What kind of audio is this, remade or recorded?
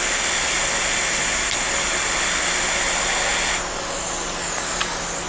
recorded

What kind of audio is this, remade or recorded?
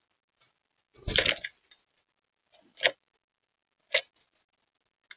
recorded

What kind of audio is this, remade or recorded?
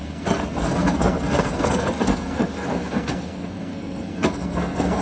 remade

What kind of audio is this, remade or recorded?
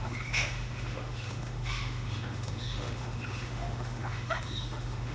remade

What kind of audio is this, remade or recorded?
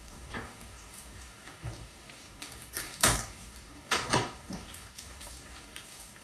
remade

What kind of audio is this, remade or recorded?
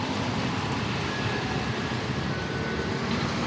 recorded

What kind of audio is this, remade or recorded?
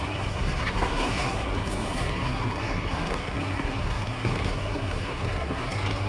remade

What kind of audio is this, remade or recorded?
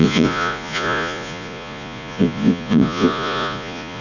remade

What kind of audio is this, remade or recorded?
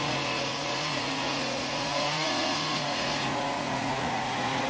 remade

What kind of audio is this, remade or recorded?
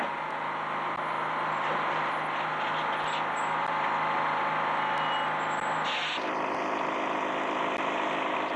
recorded